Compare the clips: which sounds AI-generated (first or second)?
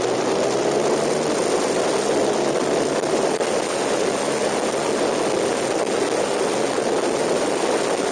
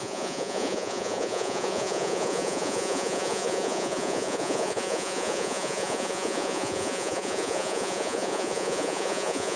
second